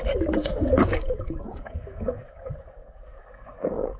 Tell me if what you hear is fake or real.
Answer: fake